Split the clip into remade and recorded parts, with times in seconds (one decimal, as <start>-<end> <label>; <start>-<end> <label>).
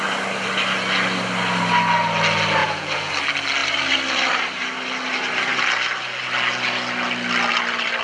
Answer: 0.0-2.6 recorded; 2.6-3.1 remade; 3.1-8.0 recorded